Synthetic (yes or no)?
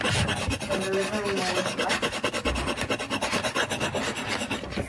no